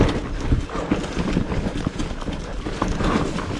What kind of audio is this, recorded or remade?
recorded